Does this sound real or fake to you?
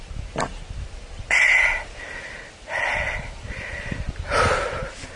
real